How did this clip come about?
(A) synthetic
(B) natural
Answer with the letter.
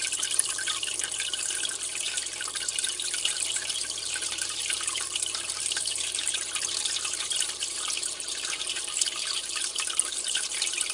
A